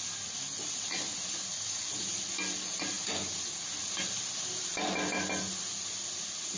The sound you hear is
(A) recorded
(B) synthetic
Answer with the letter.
A